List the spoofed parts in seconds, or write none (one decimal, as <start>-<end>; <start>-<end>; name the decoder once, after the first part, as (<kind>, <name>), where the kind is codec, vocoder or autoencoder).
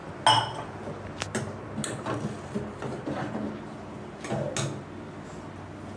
2.9-4.5 (vocoder, BigVGAN v2)